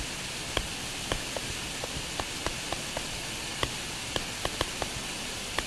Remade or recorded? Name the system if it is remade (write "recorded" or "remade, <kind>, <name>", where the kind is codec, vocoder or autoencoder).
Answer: recorded